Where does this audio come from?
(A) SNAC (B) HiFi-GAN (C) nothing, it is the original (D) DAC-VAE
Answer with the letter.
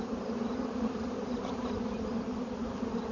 C